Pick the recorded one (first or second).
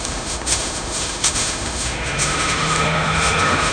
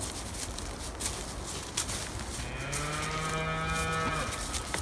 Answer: second